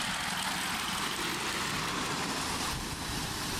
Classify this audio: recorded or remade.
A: recorded